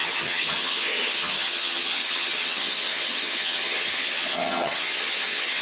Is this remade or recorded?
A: remade